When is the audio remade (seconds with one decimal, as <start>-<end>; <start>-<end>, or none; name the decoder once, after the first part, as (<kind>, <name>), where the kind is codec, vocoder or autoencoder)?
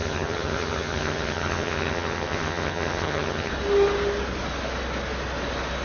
0.0-3.5 (vocoder, HiFi-GAN)